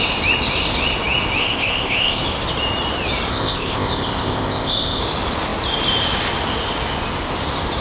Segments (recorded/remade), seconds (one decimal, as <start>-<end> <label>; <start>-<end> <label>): 0.0-1.4 recorded; 1.4-2.2 remade; 2.2-3.3 recorded; 3.3-5.0 remade; 5.0-7.8 recorded